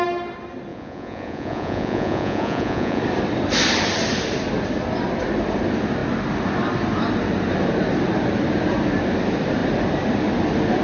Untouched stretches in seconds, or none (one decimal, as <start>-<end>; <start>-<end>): 0.0-0.7; 3.0-10.8